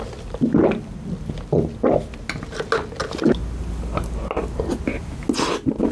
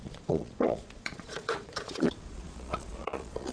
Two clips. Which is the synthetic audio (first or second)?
second